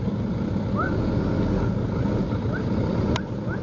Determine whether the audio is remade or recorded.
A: recorded